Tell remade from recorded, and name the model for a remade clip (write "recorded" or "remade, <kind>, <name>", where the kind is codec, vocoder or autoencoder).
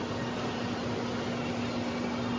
recorded